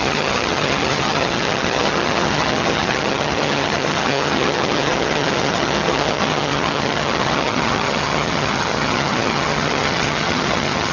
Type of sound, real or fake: fake